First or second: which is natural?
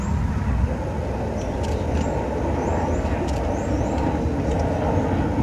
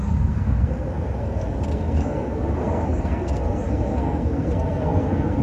first